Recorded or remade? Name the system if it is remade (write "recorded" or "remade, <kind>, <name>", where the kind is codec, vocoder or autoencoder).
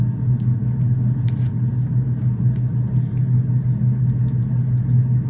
recorded